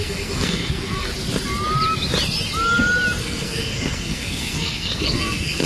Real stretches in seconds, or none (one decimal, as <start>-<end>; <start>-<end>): 1.1-3.2